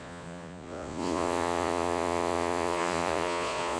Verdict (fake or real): fake